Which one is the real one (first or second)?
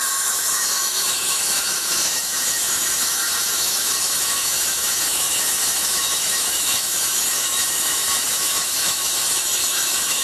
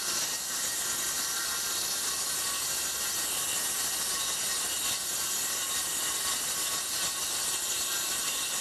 second